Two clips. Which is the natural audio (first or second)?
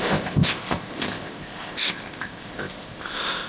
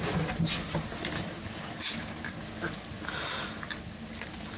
second